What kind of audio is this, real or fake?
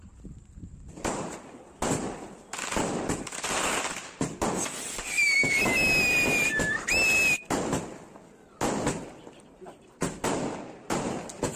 real